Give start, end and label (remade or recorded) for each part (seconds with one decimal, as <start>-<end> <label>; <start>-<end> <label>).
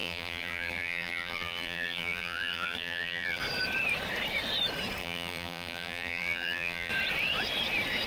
0.0-3.4 remade; 3.4-5.0 recorded; 5.0-6.9 remade; 6.9-8.1 recorded